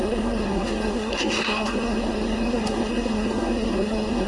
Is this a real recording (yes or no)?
no